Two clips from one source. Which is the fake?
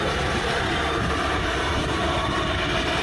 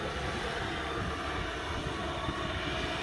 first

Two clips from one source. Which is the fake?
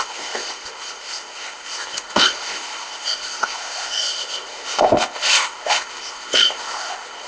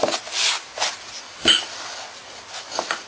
first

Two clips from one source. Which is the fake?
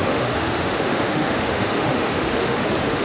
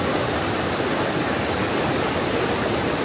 first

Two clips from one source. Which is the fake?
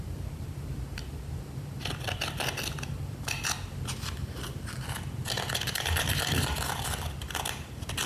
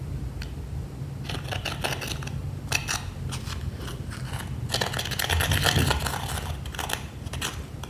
first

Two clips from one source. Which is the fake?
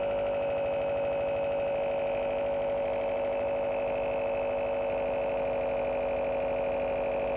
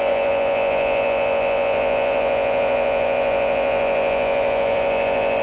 second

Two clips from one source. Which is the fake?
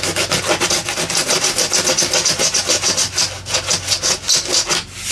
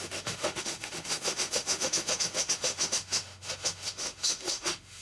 second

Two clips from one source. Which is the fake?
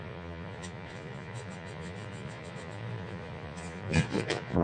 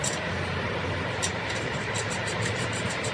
first